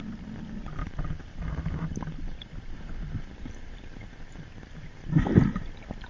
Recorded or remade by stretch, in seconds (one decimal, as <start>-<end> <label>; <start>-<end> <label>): 0.0-0.8 recorded; 0.8-4.5 remade; 4.5-6.1 recorded